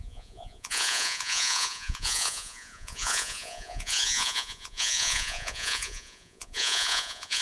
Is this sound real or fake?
fake